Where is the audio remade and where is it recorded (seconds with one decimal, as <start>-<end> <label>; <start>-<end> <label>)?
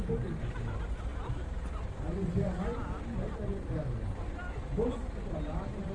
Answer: 0.0-5.9 recorded